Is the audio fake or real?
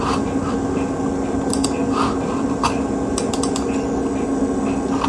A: real